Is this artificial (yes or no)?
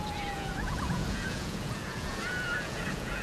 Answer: yes